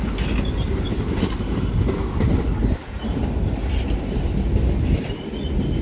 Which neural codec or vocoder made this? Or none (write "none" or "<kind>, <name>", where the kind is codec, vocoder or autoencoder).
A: none